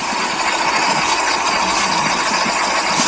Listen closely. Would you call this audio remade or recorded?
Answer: recorded